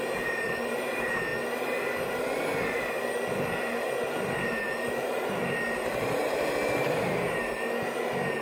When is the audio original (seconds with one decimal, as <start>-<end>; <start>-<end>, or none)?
1.3-2.9